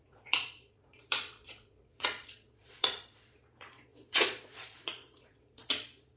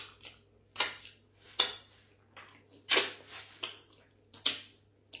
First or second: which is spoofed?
first